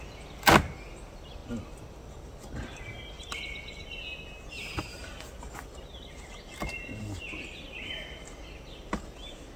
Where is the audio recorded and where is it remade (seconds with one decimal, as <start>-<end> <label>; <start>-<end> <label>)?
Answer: 0.0-9.6 recorded